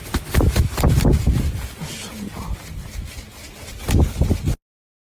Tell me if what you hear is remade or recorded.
recorded